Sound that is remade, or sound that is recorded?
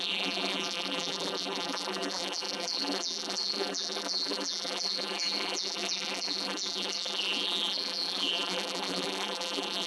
remade